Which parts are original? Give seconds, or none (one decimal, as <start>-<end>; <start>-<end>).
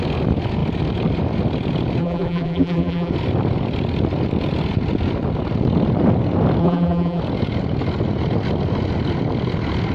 0.0-2.0; 3.1-6.6; 7.2-9.9